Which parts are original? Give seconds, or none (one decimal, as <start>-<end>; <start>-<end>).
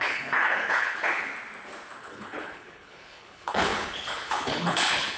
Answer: 1.3-2.0